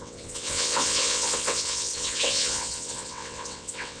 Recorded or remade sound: remade